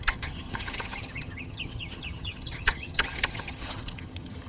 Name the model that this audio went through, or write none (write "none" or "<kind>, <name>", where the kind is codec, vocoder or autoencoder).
vocoder, HiFi-GAN